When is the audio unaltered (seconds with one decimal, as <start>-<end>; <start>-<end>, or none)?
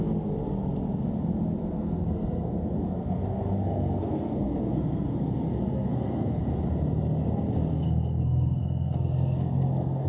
0.0-1.6; 6.4-7.7